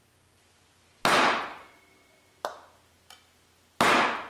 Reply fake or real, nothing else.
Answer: real